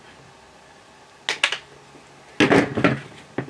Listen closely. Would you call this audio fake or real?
real